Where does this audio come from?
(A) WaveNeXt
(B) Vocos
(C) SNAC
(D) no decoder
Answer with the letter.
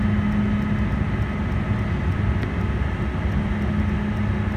D